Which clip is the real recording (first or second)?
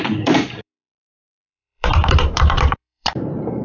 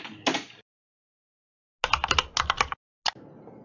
second